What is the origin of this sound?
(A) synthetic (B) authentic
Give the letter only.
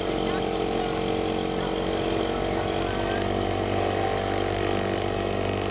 B